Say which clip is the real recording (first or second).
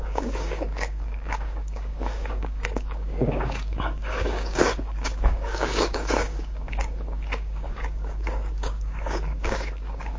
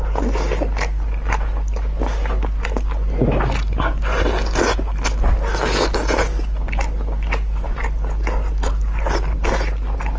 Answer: second